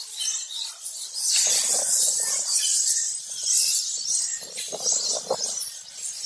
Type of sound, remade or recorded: recorded